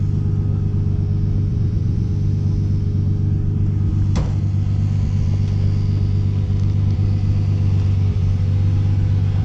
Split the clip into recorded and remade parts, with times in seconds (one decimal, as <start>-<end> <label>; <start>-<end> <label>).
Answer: 0.0-1.5 recorded; 1.5-2.1 remade; 2.1-9.4 recorded